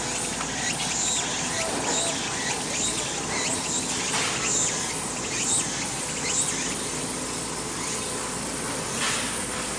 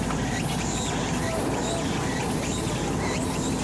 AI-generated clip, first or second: second